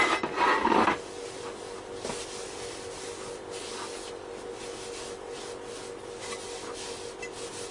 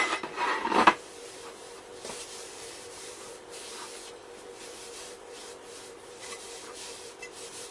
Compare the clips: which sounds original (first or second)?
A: first